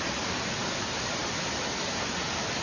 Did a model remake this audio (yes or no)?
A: no